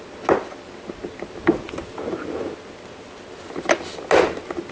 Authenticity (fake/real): real